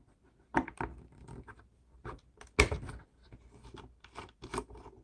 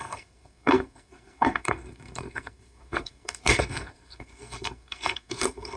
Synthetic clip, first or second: second